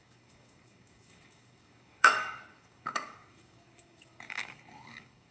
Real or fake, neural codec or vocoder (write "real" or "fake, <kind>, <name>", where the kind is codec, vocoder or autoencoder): fake, codec, DAC